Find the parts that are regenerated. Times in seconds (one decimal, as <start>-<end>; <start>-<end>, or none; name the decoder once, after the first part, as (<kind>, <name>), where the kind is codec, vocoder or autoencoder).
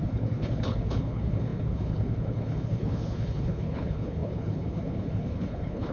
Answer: 0.0-5.9 (codec, HILCodec)